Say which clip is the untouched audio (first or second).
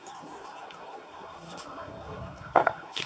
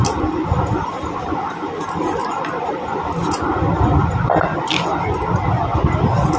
second